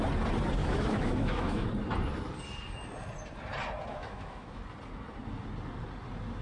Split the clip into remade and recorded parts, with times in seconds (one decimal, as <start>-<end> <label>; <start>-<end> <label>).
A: 0.0-0.6 recorded; 0.6-1.7 remade; 1.7-3.9 recorded; 3.9-4.6 remade; 4.6-6.4 recorded